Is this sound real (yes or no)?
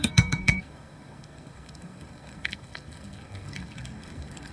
no